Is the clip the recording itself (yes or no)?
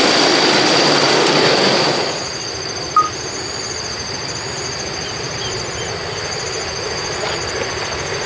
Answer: yes